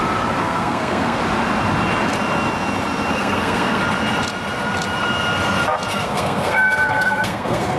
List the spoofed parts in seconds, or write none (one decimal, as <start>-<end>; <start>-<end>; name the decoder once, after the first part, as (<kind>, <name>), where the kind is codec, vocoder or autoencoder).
0.4-1.2 (codec, SNAC); 3.1-3.8; 5.9-7.8